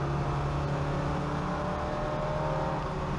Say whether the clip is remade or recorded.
recorded